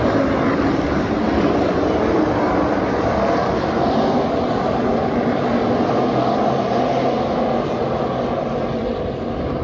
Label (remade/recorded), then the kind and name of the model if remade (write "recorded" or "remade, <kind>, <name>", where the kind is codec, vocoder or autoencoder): remade, vocoder, BigVGAN v2